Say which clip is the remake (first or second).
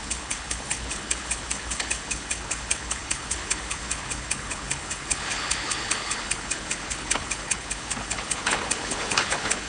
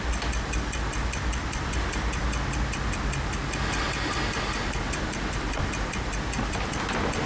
first